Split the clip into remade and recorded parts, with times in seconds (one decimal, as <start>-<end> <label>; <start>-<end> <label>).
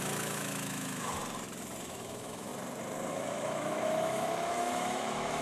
0.0-1.2 remade; 1.2-1.8 recorded; 1.8-2.5 remade; 2.5-3.1 recorded; 3.1-5.4 remade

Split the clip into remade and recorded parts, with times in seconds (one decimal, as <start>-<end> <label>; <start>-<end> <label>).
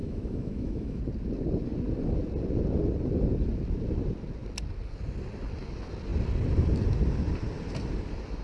0.0-1.0 remade; 1.0-8.4 recorded